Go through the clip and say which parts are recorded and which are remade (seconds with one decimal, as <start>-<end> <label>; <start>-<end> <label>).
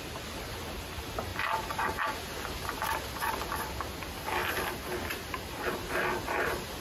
0.0-6.8 recorded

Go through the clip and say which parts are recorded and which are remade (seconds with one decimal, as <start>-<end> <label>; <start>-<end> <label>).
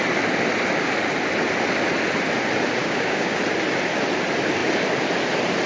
0.0-2.8 recorded; 2.8-3.4 remade; 3.4-5.7 recorded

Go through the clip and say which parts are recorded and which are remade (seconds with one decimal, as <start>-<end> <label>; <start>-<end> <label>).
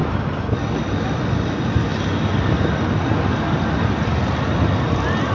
0.0-5.3 recorded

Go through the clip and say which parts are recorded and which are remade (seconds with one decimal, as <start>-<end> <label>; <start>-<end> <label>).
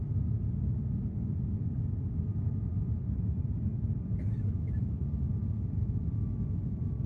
0.0-7.1 recorded